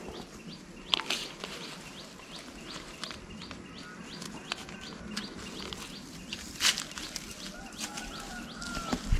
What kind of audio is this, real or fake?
real